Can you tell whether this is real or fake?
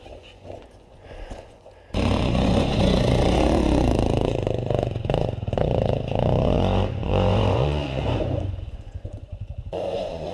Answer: fake